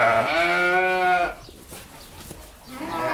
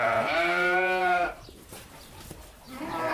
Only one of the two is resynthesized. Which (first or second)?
second